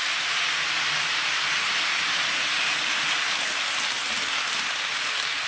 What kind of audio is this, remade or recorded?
recorded